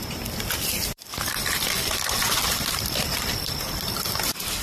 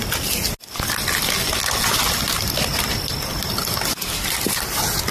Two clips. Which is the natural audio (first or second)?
second